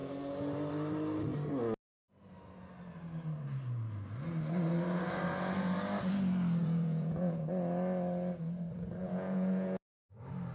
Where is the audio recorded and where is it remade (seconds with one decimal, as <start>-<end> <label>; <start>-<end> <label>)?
0.0-6.6 recorded; 6.6-7.4 remade; 7.4-9.0 recorded; 9.0-10.0 remade; 10.0-10.5 recorded